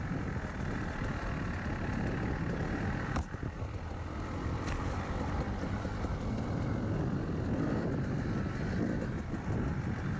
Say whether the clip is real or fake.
real